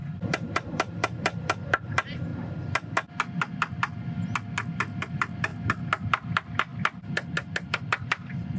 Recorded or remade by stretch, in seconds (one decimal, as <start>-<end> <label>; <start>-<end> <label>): 0.0-2.3 remade; 2.3-5.1 recorded; 5.1-5.5 remade; 5.5-6.1 recorded; 6.1-6.7 remade; 6.7-7.7 recorded; 7.7-8.6 remade